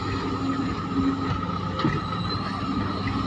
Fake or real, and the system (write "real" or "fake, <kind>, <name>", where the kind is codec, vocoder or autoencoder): real